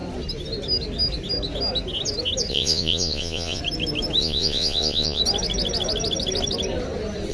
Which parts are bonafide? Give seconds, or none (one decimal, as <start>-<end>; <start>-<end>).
0.0-2.5; 3.6-4.2; 5.2-7.3